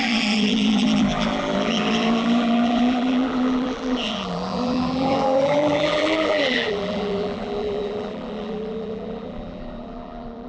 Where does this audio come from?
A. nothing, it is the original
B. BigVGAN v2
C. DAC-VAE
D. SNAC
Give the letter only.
B